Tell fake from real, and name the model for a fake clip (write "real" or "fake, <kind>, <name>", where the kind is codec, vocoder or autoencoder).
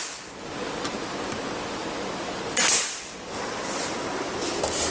real